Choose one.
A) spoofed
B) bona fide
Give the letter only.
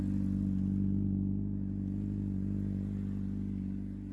B